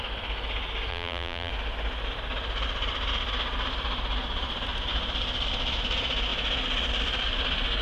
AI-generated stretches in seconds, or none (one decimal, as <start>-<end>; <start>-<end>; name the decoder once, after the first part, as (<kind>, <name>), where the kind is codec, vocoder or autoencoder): 0.9-1.5 (vocoder, BigVGAN v2)